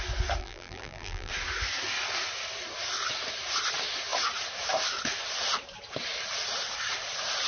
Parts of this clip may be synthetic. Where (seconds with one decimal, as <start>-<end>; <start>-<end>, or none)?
0.4-1.3

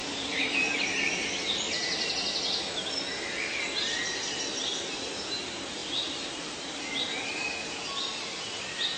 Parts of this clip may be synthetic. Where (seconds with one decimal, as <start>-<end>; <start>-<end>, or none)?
0.0-2.1; 5.8-6.6

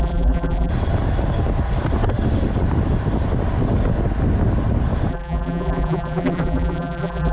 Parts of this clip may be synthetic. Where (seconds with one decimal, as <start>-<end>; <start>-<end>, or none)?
0.0-0.7; 5.1-7.3

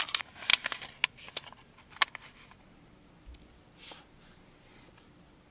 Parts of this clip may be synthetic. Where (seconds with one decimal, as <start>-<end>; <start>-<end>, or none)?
none

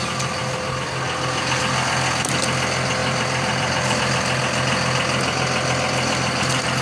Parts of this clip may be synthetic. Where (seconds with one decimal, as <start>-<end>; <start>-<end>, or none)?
3.0-4.0